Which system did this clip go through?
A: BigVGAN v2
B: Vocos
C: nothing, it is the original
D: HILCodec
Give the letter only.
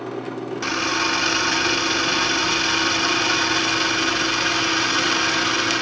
C